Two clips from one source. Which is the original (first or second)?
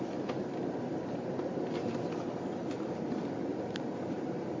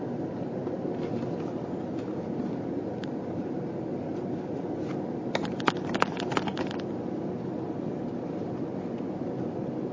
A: second